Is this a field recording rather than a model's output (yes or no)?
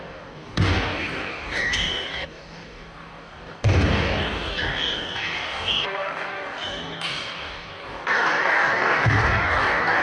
no